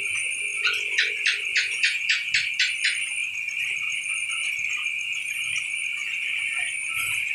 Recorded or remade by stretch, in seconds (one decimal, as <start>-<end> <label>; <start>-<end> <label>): 0.0-1.5 recorded; 1.5-2.3 remade; 2.3-7.3 recorded